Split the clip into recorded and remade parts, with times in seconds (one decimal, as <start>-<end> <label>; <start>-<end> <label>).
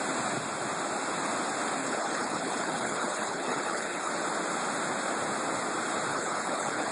0.0-1.8 recorded; 1.8-4.1 remade; 4.1-6.1 recorded; 6.1-6.9 remade